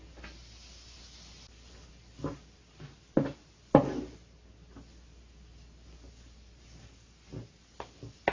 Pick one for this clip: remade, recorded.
recorded